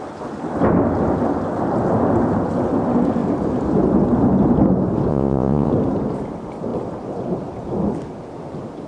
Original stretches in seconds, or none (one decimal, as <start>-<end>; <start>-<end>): 0.0-5.1; 5.7-8.9